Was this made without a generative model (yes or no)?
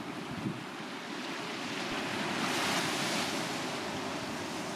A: yes